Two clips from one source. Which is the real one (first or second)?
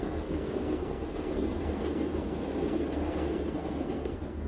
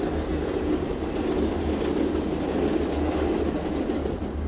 second